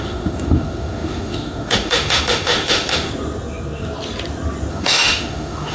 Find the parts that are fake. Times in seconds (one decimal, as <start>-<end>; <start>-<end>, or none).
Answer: 0.0-3.1; 4.7-5.7